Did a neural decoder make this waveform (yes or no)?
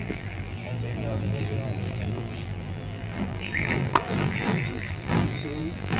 yes